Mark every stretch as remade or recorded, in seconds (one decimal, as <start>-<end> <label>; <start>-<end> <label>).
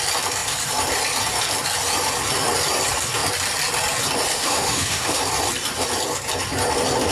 0.0-4.3 recorded; 4.3-5.2 remade; 5.2-7.1 recorded